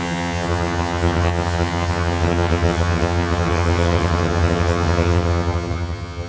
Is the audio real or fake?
fake